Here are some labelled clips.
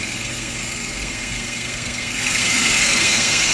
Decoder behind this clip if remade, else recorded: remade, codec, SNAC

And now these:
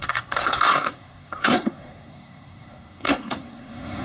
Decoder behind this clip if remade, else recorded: remade, codec, SNAC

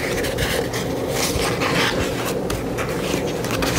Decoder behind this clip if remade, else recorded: recorded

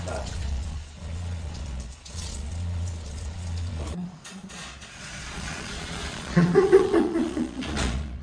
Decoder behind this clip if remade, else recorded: remade, vocoder, Vocos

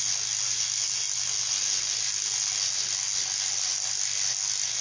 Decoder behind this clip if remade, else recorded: recorded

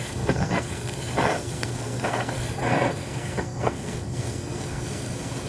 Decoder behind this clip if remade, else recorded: remade, codec, SNAC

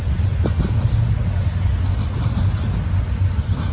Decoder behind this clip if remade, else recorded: recorded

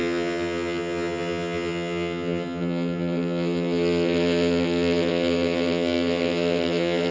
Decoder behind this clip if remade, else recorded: remade, vocoder, HiFi-GAN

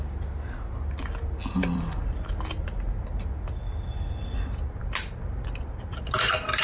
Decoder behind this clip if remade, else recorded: recorded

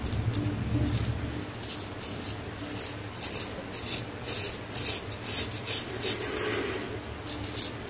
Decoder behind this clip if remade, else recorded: recorded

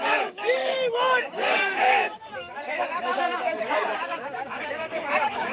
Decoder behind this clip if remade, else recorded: remade, codec, DAC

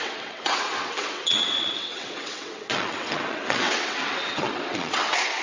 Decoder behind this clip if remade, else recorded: remade, vocoder, WaveNeXt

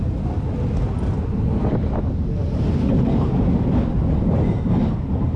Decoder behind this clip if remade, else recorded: recorded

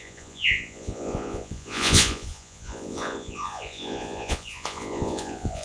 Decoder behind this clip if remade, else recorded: remade, vocoder, Vocos